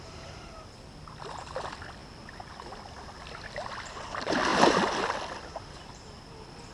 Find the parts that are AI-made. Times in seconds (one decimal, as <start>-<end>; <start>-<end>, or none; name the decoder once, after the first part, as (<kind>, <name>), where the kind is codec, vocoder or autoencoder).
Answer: 4.5-6.1 (vocoder, BigVGAN v2)